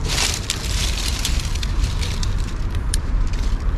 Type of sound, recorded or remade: remade